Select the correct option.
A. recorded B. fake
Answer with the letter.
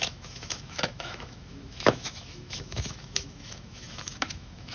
B